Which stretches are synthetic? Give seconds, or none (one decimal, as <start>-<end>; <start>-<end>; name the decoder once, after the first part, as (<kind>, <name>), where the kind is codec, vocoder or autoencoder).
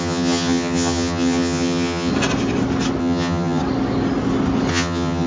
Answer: 0.0-2.1 (vocoder, HiFi-GAN); 3.0-3.6; 4.7-5.3